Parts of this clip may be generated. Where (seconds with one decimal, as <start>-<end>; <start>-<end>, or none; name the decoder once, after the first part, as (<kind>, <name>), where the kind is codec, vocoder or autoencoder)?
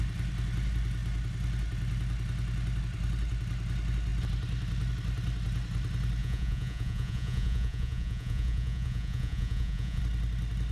6.2-10.0 (vocoder, Vocos)